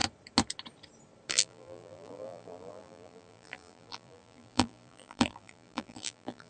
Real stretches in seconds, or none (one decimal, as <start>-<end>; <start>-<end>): 0.0-1.3